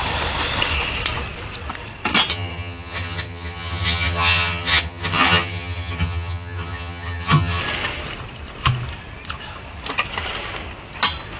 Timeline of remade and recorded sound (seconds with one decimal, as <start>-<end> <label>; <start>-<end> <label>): 0.0-2.3 recorded; 2.3-7.6 remade; 7.6-11.4 recorded